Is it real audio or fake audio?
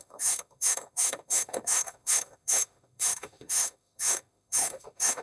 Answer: fake